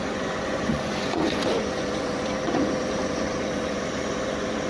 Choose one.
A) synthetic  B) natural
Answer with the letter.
A